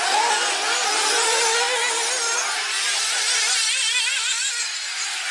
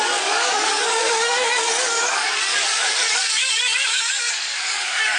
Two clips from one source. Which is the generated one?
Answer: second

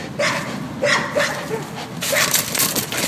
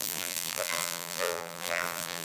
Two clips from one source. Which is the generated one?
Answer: second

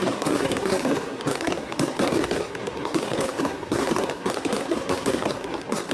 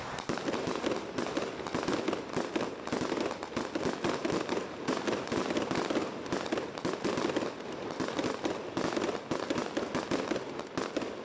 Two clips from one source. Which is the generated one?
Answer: first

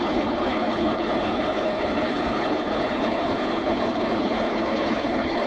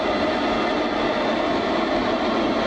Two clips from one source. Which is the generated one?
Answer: first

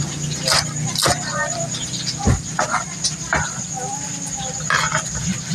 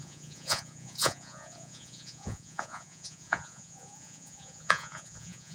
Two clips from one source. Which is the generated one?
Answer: second